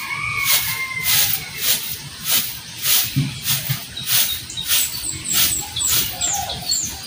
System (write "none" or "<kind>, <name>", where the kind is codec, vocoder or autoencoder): none